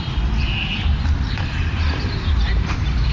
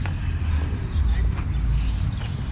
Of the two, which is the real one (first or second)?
second